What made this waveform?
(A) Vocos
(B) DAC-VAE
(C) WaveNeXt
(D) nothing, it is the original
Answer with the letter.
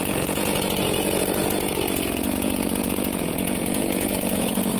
A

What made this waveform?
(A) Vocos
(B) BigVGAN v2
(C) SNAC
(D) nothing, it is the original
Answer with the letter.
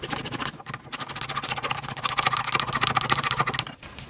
D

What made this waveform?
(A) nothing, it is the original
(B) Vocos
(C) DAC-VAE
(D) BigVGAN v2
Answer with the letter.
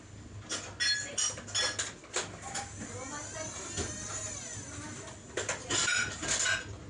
A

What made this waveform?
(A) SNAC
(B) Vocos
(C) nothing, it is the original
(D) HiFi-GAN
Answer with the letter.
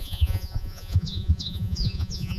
B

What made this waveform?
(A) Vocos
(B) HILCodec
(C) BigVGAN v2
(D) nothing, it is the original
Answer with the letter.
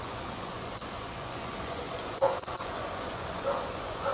A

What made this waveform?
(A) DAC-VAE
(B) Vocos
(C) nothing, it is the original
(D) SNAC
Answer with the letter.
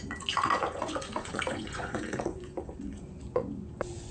B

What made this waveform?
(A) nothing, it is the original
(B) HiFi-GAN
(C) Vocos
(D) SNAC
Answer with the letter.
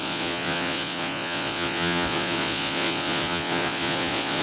C